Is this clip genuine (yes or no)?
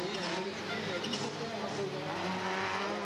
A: yes